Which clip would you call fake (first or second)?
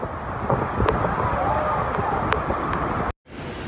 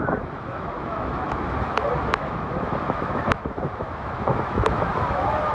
second